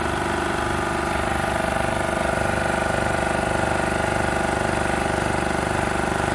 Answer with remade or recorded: recorded